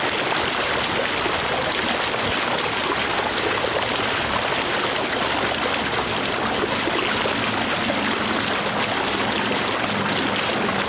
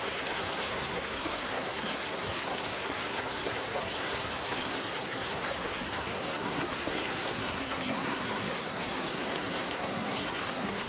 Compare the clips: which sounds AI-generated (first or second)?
second